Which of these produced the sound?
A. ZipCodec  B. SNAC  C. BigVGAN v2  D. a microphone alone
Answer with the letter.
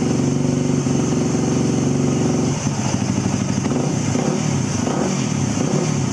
D